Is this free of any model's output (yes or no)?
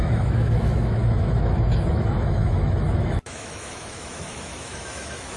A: no